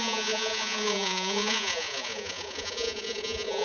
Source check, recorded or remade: remade